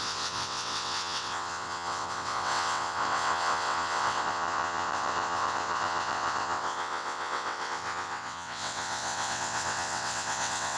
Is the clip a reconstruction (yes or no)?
yes